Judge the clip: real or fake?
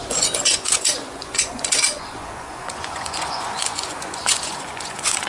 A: fake